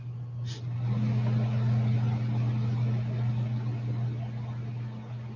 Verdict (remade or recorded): recorded